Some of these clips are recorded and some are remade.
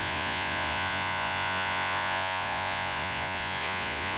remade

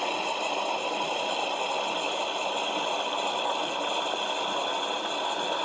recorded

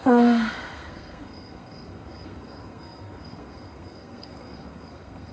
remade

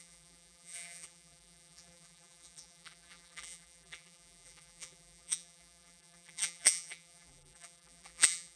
remade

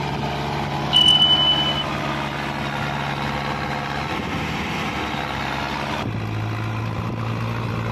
recorded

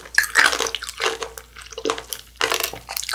recorded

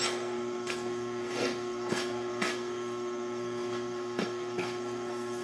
remade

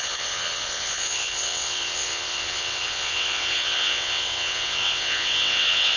remade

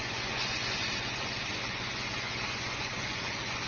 remade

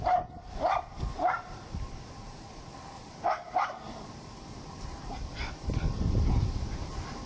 remade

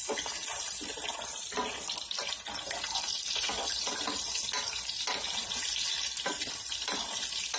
recorded